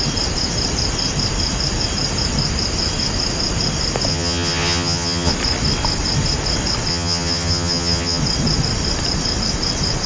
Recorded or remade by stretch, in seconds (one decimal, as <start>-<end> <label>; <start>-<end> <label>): 0.0-4.1 recorded; 4.1-5.3 remade; 5.3-6.9 recorded; 6.9-8.2 remade; 8.2-10.1 recorded